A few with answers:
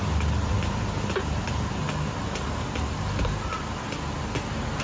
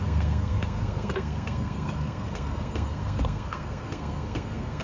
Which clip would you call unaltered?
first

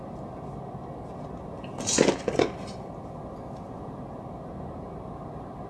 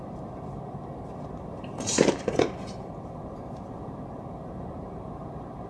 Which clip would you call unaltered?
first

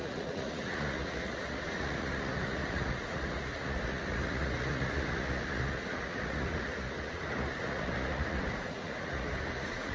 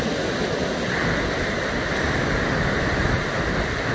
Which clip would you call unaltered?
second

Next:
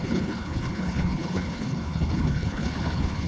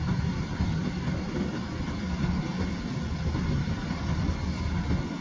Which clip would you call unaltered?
second